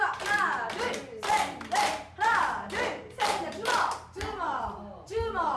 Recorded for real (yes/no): yes